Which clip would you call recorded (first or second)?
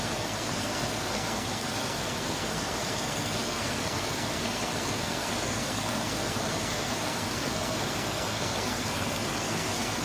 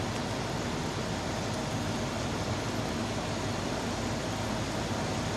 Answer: second